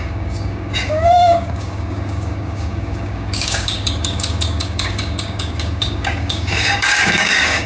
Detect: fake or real fake